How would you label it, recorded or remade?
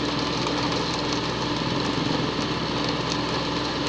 recorded